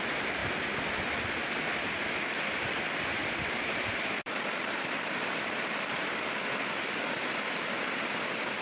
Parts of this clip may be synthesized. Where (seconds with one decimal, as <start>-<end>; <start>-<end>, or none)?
0.4-1.3; 3.2-6.1

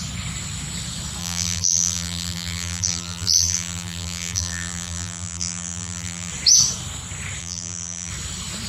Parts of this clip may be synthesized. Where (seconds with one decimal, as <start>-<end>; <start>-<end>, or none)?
1.2-6.3; 7.4-8.1

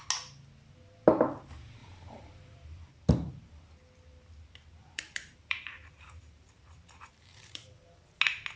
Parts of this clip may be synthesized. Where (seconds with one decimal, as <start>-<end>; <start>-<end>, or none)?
1.8-3.6; 4.8-8.0